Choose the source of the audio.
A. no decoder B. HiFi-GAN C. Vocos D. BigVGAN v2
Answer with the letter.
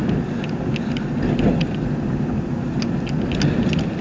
A